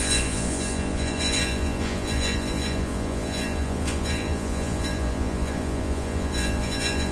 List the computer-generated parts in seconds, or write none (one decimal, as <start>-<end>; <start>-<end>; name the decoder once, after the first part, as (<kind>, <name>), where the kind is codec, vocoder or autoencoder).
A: 0.0-7.1 (vocoder, Vocos)